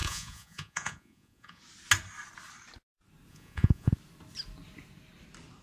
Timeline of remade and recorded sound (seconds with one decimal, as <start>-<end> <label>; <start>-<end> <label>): 0.0-1.6 remade; 1.6-3.3 recorded; 3.3-3.9 remade; 3.9-5.6 recorded